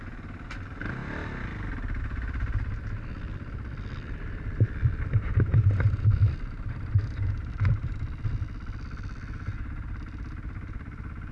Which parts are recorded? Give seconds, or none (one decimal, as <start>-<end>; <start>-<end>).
1.0-2.0